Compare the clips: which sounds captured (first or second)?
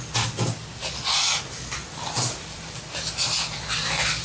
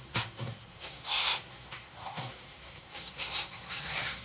first